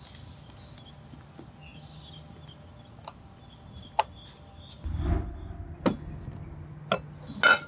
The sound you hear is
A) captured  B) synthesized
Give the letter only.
A